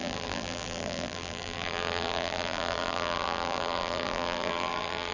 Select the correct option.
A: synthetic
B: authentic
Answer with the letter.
A